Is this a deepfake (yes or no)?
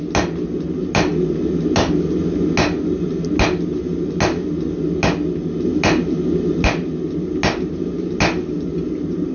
no